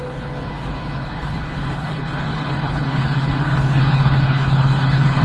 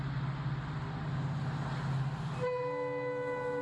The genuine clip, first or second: second